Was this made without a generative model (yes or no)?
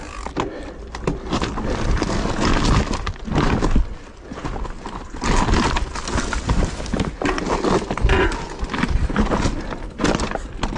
yes